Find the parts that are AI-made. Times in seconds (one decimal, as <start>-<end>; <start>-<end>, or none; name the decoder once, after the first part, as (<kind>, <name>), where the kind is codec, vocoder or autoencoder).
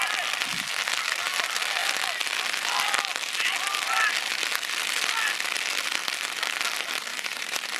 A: 7.1-7.8 (vocoder, BigVGAN v2)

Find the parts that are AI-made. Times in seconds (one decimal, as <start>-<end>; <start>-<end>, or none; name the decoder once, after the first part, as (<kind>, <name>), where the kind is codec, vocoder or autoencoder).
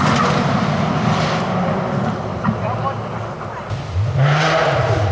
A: 0.0-2.3 (vocoder, BigVGAN v2); 4.4-5.1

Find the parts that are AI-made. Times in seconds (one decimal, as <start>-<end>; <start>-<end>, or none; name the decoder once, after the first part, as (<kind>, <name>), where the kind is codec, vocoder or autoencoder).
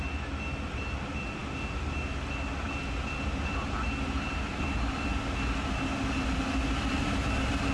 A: none